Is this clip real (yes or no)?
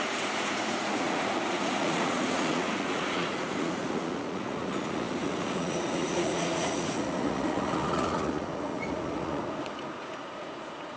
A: no